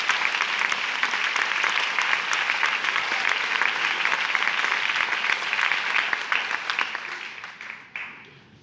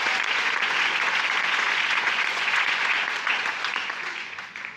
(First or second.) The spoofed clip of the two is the second